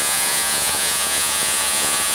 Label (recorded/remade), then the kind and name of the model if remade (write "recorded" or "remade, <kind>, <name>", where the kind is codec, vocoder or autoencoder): remade, vocoder, Vocos